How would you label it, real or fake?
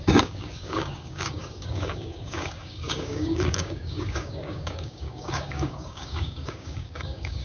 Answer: fake